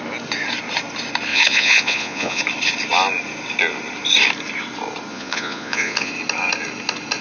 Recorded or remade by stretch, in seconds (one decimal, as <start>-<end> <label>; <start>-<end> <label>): 0.0-1.3 recorded; 1.3-2.4 remade; 2.4-5.1 recorded; 5.1-6.1 remade; 6.1-7.2 recorded